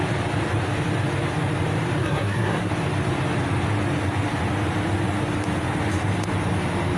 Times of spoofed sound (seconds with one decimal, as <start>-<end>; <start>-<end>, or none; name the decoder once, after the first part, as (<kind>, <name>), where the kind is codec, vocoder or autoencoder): 2.0-2.7 (codec, SNAC)